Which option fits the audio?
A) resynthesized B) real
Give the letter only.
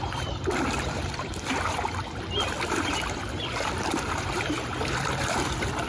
A